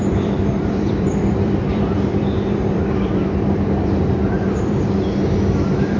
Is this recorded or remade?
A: remade